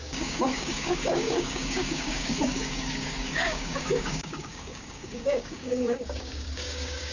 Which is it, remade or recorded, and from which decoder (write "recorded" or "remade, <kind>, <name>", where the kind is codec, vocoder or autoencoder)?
remade, codec, DAC